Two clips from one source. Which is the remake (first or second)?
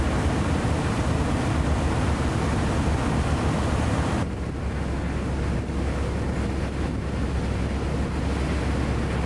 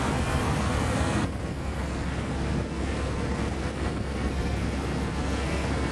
second